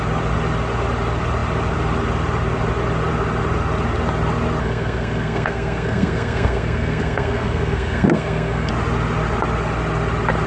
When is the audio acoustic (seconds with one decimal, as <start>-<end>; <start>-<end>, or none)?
0.0-4.6; 8.7-10.5